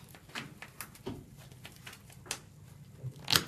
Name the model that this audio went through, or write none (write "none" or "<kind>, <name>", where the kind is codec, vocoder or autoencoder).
none